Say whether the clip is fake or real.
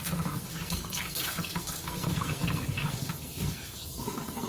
fake